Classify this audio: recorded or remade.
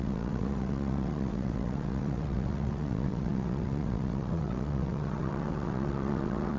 remade